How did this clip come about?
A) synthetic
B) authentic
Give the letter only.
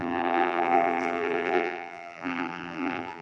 A